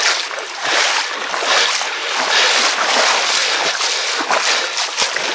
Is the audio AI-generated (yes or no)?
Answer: no